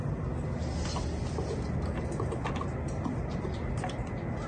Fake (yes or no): no